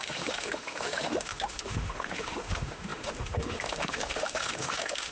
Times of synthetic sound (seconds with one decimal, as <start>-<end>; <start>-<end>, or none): 0.0-5.1